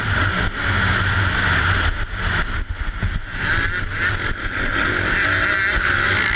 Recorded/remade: recorded